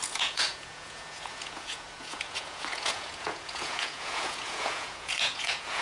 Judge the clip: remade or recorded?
remade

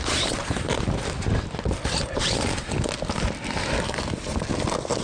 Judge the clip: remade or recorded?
recorded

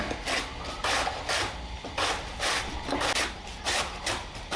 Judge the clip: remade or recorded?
recorded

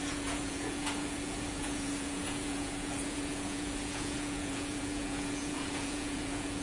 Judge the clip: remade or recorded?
remade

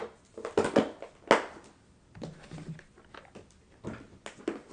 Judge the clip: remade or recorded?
recorded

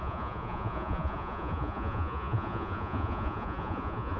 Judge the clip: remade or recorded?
remade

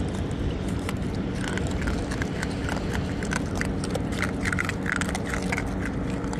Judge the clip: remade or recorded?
recorded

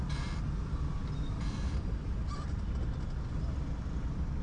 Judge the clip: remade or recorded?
recorded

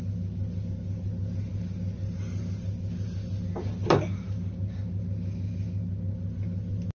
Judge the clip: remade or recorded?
recorded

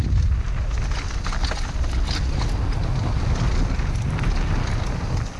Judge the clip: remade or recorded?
recorded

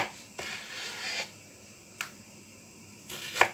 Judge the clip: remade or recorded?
recorded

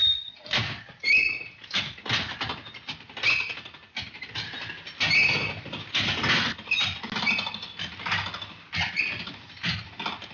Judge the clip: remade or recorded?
recorded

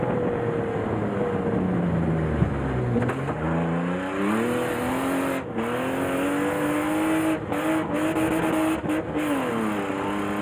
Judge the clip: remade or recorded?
recorded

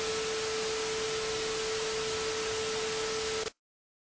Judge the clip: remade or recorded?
recorded